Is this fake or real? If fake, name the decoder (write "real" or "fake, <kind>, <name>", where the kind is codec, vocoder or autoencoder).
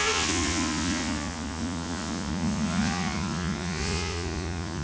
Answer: fake, vocoder, Vocos